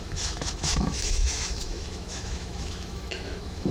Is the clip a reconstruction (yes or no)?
yes